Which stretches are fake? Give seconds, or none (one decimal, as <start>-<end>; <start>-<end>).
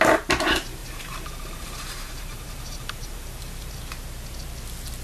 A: 0.8-3.8